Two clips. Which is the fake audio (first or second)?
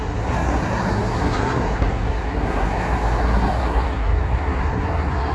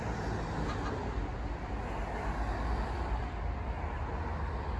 first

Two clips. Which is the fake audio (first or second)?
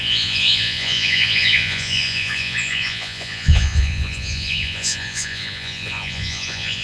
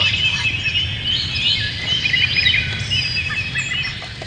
first